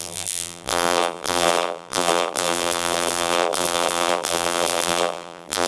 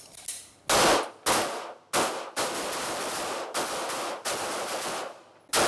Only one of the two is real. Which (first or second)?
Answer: second